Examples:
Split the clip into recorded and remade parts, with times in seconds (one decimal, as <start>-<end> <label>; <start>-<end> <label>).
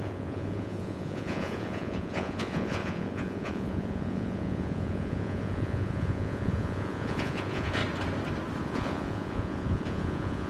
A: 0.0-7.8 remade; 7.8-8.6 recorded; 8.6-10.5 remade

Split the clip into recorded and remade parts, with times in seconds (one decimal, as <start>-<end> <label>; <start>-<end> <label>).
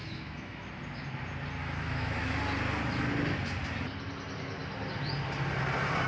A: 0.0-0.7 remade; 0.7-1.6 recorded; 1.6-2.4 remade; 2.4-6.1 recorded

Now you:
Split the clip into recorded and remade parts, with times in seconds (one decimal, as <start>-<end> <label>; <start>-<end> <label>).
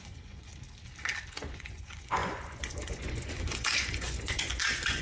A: 0.0-0.5 remade; 0.5-1.3 recorded; 1.3-5.0 remade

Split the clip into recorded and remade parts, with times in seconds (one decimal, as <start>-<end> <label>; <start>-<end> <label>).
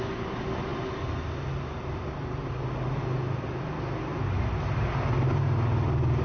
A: 0.0-6.2 recorded